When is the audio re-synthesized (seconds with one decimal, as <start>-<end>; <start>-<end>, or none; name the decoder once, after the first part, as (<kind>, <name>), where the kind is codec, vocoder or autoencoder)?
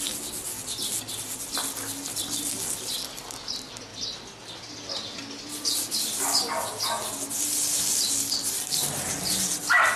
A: none